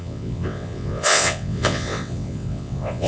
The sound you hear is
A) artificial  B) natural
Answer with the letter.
A